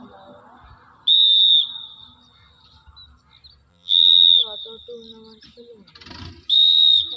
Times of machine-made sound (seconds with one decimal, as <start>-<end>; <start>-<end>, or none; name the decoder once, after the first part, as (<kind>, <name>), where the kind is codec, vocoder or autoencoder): 3.7-4.4 (vocoder, BigVGAN v2)